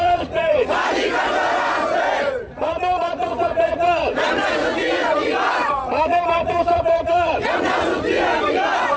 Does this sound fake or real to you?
fake